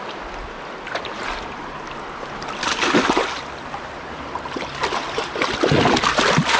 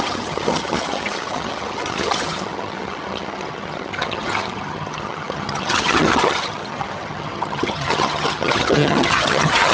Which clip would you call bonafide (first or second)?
first